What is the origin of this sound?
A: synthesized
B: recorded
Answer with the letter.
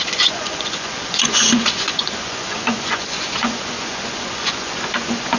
A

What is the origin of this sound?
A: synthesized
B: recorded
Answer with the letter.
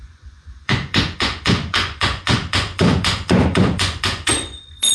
A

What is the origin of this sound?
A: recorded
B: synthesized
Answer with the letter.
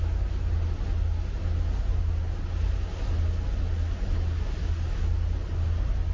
A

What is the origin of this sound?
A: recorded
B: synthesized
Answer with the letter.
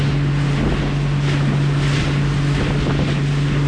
A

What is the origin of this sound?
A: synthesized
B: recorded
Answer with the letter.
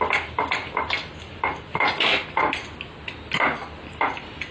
B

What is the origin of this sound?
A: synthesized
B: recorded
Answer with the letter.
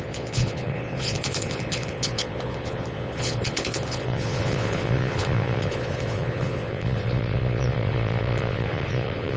A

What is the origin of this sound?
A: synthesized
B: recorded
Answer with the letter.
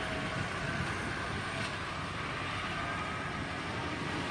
B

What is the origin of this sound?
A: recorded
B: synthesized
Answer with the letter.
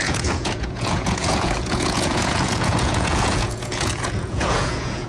B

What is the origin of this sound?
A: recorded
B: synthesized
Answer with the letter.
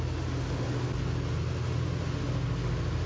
A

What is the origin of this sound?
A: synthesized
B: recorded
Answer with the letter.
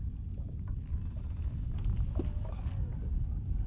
B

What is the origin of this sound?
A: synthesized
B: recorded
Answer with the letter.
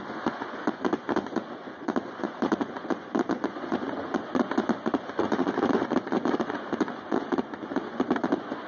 A